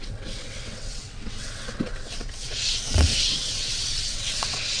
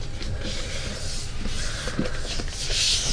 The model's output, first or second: first